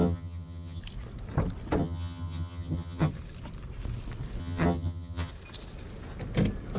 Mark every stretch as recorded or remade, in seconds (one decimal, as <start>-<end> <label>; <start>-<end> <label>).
0.0-0.8 remade; 0.8-1.8 recorded; 1.8-3.1 remade; 3.1-4.4 recorded; 4.4-5.3 remade; 5.3-6.8 recorded